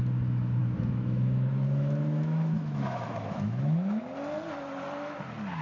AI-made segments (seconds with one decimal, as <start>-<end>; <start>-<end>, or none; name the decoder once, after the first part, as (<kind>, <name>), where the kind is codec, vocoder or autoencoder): 0.6-4.0 (autoencoder, DAC-VAE)